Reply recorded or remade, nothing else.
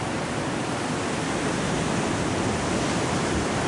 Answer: recorded